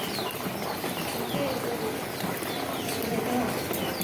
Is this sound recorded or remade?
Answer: recorded